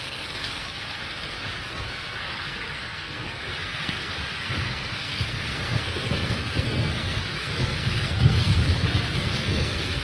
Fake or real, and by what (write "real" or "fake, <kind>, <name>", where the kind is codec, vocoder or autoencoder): fake, codec, SNAC